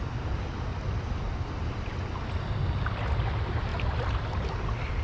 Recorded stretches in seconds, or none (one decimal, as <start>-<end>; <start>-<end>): 0.0-0.7; 1.8-3.7